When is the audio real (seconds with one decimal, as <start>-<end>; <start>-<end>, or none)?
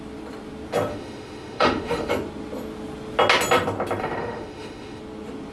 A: 0.0-0.9; 2.1-4.0; 5.0-5.5